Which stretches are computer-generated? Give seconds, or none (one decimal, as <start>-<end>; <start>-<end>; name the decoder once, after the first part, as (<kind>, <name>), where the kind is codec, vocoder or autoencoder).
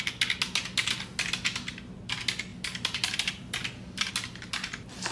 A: 2.5-4.1 (vocoder, BigVGAN v2)